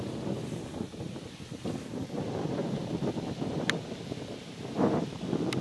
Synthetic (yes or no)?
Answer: no